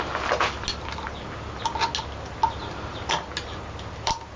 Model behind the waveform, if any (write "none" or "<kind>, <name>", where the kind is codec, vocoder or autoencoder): none